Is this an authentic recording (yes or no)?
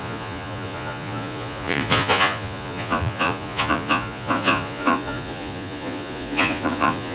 no